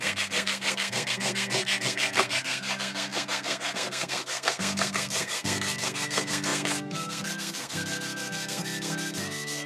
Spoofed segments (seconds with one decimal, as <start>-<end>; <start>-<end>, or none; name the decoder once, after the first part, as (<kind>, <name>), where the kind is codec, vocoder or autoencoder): 0.0-9.7 (codec, SNAC)